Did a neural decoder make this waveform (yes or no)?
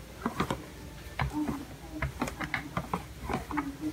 no